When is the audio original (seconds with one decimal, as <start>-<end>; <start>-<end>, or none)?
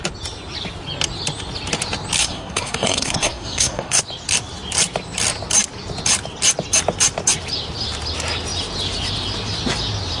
0.0-2.2; 4.0-10.2